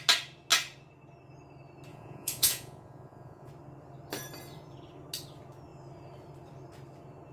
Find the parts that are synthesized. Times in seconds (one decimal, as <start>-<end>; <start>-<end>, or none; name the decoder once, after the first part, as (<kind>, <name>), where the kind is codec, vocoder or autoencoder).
1.9-3.5 (vocoder, Vocos)